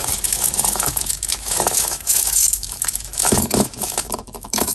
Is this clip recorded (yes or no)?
no